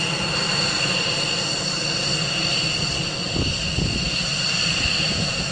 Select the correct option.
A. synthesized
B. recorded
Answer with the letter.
B